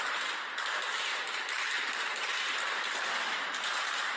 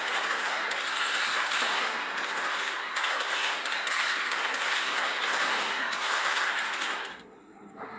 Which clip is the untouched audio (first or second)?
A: first